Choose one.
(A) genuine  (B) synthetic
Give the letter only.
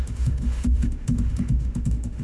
B